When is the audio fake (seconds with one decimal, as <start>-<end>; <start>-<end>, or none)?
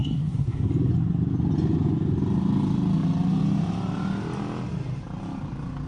0.0-0.7